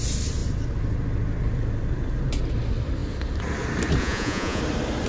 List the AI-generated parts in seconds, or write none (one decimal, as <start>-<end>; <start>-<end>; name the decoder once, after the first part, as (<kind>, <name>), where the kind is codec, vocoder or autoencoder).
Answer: 4.0-4.6 (vocoder, Vocos)